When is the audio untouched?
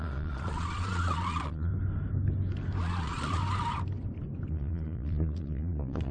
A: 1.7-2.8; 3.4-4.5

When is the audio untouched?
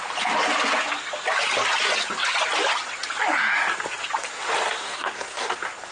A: 0.0-4.8; 5.5-5.9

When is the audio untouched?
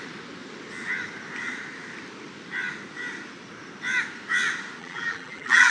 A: 0.0-4.8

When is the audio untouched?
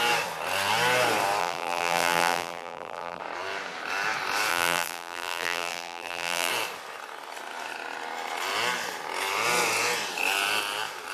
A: 0.0-1.4; 3.2-4.5; 6.5-11.1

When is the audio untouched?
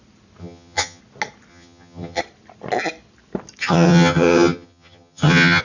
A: 0.0-0.4; 1.0-1.5; 2.2-3.6